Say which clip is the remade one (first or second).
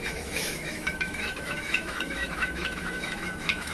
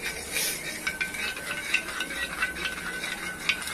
first